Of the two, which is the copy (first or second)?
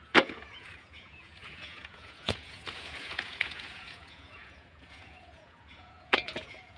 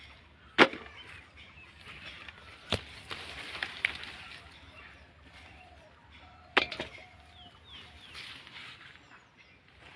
first